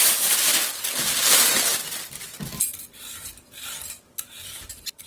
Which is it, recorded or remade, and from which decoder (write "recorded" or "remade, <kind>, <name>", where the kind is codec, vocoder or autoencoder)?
recorded